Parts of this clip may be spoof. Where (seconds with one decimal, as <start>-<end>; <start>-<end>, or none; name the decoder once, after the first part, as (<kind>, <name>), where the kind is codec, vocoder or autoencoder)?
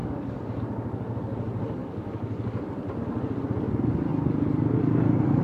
0.0-0.6 (codec, DAC); 1.8-2.6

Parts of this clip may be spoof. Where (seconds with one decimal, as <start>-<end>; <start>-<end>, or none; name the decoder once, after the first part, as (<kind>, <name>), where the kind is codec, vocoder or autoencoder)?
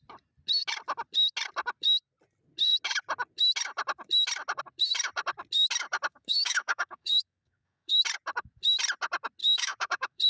6.1-8.0 (codec, DAC); 9.4-10.3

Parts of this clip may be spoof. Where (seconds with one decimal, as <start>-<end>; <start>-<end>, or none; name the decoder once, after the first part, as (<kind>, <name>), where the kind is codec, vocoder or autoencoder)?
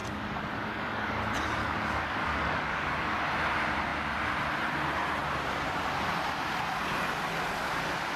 0.0-1.2 (codec, DAC); 1.6-3.2